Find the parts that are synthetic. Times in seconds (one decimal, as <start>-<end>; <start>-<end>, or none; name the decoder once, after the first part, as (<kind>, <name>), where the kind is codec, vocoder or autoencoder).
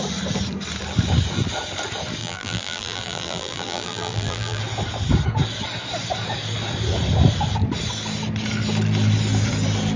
2.2-4.6 (vocoder, BigVGAN v2)